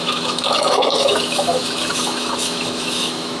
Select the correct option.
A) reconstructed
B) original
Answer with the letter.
A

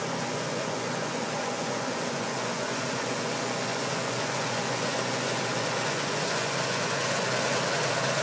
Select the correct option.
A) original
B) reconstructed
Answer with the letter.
B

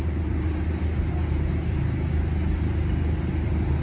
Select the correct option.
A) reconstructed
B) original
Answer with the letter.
B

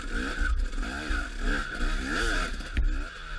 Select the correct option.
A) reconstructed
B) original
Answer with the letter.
B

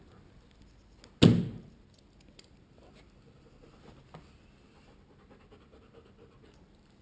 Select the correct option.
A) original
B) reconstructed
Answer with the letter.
A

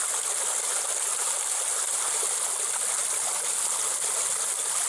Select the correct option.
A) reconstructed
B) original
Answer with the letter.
B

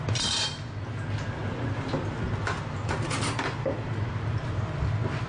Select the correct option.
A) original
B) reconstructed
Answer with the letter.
A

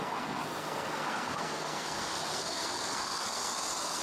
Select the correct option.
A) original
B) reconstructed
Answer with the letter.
B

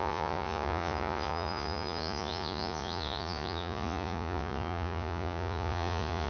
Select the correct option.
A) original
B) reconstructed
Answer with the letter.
B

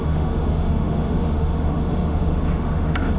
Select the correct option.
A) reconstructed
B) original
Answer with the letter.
A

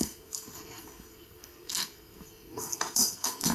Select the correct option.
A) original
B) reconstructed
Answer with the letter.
B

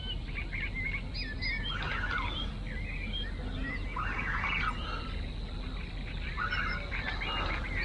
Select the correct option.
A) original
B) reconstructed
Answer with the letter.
A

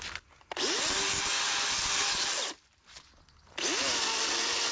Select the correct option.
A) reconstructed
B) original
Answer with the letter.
B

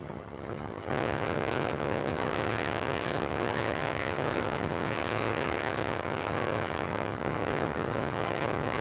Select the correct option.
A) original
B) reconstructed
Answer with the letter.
B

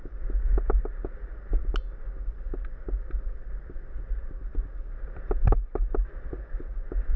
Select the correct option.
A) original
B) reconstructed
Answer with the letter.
A